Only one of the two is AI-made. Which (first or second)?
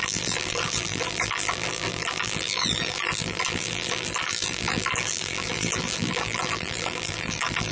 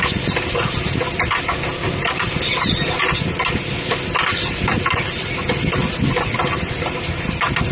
first